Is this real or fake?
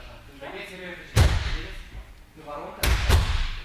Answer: real